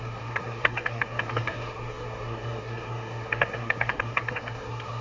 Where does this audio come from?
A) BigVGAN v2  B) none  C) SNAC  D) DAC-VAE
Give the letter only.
C